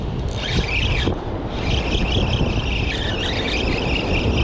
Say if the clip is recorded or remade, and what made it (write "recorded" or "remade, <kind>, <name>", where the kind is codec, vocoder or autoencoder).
recorded